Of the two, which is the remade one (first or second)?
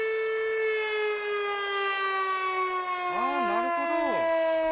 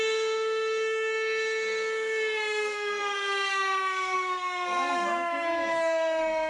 second